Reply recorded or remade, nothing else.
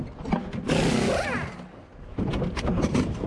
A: recorded